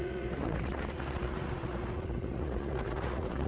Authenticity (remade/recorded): remade